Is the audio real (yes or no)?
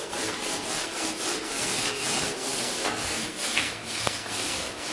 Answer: no